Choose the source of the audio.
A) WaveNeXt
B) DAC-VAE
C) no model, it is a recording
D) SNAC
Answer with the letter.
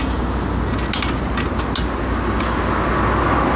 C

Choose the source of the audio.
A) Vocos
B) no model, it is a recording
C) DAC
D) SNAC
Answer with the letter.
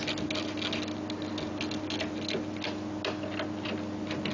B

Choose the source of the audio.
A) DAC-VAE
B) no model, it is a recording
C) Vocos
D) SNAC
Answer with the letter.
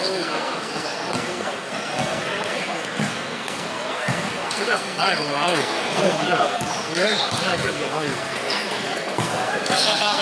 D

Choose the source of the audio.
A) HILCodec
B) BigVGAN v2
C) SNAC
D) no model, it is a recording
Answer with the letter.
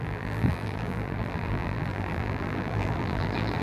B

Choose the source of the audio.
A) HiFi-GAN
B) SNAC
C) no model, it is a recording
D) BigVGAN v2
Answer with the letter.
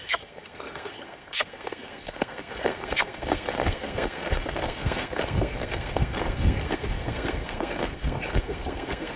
B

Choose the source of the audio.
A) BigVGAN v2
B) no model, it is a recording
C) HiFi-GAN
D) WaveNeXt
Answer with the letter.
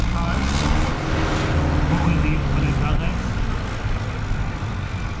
B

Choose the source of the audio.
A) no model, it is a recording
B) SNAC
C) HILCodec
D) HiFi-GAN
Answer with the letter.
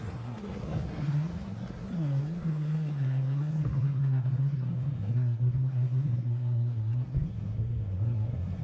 B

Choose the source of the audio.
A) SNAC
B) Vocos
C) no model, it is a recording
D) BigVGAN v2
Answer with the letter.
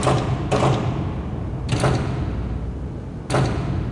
C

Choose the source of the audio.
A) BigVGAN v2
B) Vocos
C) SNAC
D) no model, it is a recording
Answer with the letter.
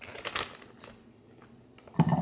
D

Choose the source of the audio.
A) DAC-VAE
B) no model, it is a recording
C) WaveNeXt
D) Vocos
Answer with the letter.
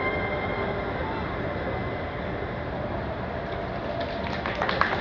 B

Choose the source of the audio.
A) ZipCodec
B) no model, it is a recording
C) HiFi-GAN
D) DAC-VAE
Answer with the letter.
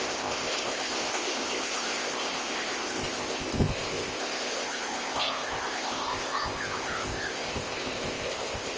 A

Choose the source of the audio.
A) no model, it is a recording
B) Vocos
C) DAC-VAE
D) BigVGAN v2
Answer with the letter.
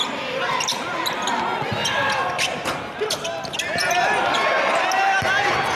A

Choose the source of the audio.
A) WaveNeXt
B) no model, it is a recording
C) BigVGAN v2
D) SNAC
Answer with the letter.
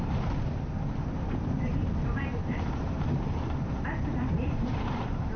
C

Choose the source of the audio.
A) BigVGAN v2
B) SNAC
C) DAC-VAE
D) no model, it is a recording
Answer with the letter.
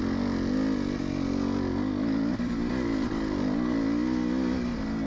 D